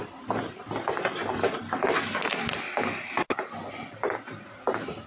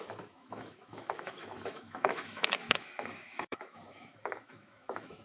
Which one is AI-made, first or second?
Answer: second